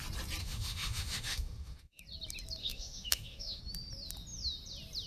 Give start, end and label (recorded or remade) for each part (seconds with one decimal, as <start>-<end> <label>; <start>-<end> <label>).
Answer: 0.0-0.4 recorded; 0.4-2.0 remade; 2.0-2.6 recorded; 2.6-3.6 remade; 3.6-5.1 recorded